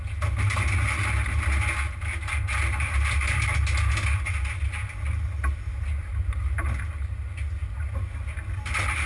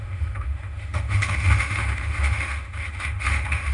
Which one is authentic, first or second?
first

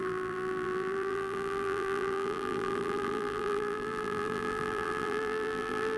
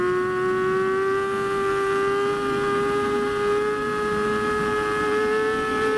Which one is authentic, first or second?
second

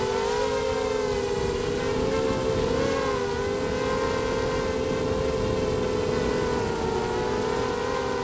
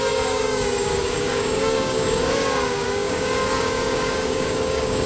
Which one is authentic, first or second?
first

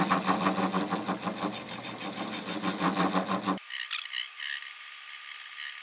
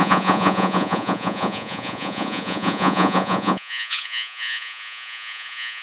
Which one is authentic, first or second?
first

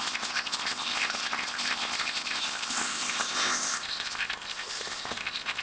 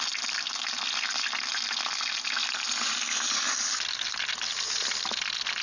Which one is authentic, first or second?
second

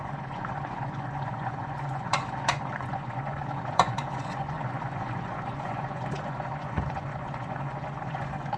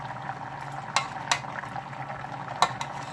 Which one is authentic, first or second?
second